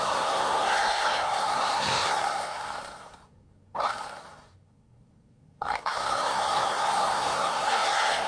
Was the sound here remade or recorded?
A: remade